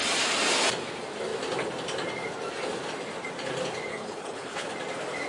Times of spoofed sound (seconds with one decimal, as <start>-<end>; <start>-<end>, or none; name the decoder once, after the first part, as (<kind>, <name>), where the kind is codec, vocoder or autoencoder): 3.9-4.7 (codec, HILCodec)